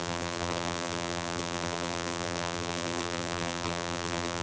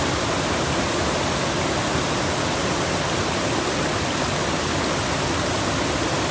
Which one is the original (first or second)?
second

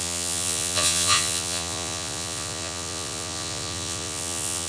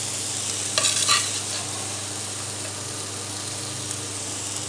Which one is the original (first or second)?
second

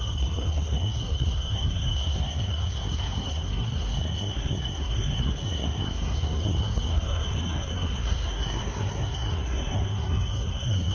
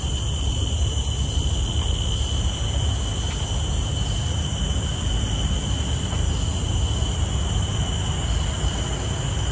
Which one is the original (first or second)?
second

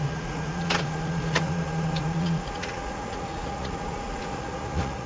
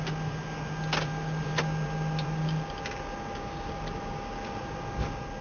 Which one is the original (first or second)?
second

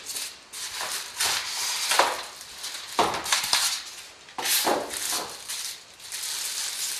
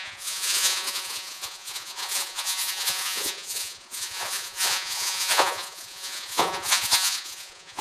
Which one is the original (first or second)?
first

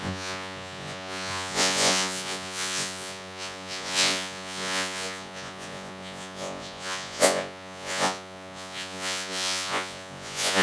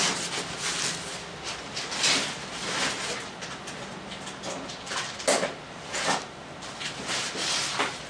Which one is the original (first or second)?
second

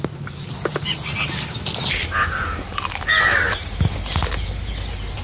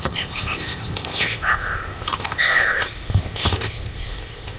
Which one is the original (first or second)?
first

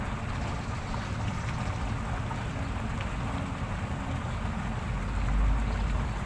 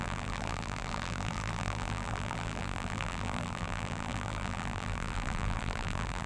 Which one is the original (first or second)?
first